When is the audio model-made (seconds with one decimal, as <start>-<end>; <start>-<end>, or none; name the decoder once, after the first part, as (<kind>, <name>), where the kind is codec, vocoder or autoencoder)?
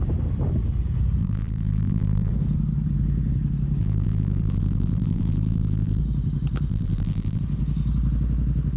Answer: 1.2-2.3 (vocoder, BigVGAN v2); 3.8-6.0; 6.7-7.4